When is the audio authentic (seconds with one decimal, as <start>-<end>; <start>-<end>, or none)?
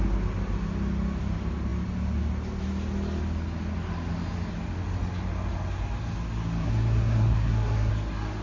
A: 0.0-6.6; 7.9-8.4